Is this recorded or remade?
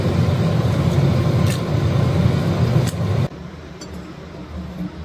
recorded